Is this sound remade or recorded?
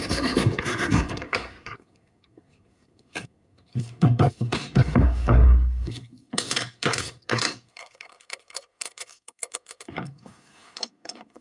remade